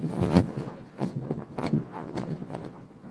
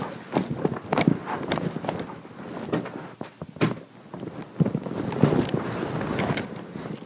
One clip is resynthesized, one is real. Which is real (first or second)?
second